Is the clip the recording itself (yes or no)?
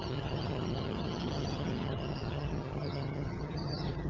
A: no